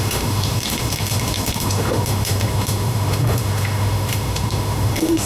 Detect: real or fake fake